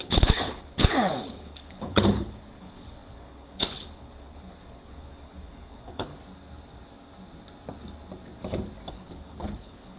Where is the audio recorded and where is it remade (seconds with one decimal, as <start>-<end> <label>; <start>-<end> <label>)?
0.0-6.1 remade; 6.1-8.9 recorded; 8.9-10.0 remade